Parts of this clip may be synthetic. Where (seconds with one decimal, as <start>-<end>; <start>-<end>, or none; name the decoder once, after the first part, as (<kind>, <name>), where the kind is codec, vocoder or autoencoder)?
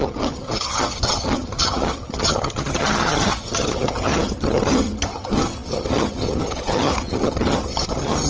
0.0-8.3 (vocoder, HiFi-GAN)